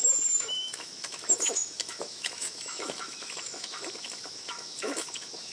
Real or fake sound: fake